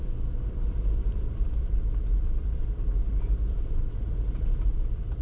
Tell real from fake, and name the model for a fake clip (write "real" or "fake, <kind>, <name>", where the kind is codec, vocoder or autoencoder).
fake, vocoder, BigVGAN v2